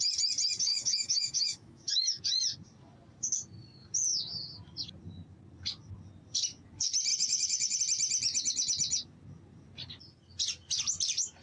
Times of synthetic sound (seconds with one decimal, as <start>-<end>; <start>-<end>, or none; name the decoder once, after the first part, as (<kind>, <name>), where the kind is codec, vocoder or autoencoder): 0.7-2.2 (autoencoder, DAC-VAE); 7.1-7.8